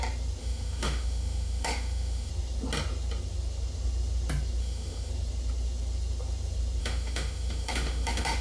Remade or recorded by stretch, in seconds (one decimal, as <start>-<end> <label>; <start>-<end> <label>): 0.0-0.4 recorded; 0.4-2.3 remade; 2.3-4.6 recorded; 4.6-5.1 remade; 5.1-6.8 recorded; 6.8-8.4 remade